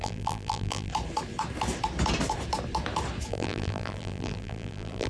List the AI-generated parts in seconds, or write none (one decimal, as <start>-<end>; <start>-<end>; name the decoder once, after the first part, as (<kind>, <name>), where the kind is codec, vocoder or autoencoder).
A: 0.0-0.9 (vocoder, BigVGAN v2); 3.3-5.1